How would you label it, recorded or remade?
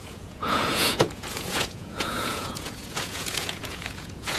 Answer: remade